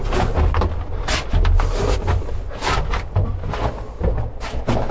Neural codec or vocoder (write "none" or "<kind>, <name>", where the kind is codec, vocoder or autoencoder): none